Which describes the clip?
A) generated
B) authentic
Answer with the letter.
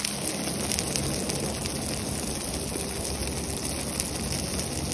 B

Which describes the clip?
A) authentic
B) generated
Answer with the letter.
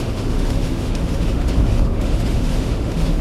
B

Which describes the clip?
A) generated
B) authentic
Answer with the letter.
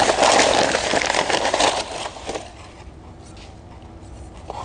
B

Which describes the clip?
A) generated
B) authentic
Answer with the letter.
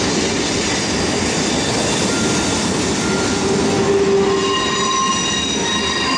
B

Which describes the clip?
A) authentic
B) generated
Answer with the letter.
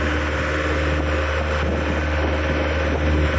A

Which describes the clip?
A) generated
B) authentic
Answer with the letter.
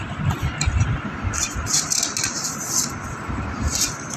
B